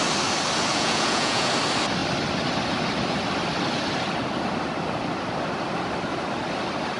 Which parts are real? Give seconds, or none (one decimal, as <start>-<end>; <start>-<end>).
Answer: 0.0-0.7; 1.5-7.0